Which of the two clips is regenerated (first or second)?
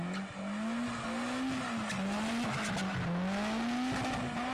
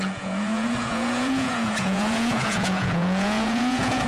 second